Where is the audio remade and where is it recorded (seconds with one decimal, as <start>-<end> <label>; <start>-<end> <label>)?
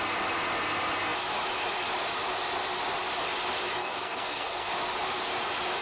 0.0-3.8 recorded; 3.8-4.7 remade; 4.7-5.8 recorded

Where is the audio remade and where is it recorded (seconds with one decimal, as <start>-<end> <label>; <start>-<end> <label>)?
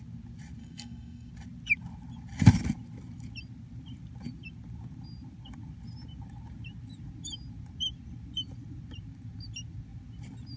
0.0-0.6 recorded; 0.6-1.3 remade; 1.3-10.6 recorded